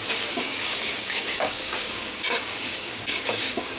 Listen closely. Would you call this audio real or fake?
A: fake